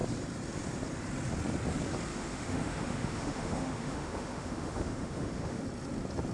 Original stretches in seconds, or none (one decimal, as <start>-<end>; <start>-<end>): 0.0-2.1; 5.6-6.3